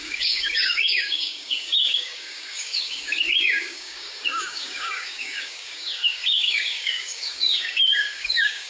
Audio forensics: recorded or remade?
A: remade